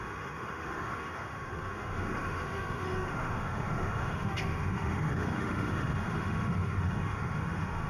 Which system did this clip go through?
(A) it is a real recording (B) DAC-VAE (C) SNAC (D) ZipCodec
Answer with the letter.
B